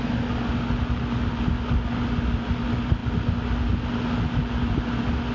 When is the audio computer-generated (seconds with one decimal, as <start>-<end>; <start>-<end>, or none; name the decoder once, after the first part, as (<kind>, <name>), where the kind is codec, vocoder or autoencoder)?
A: none